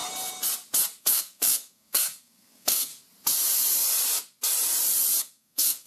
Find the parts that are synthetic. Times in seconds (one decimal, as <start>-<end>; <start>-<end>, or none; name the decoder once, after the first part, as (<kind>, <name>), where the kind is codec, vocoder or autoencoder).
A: 1.0-2.9 (codec, SNAC); 5.2-5.9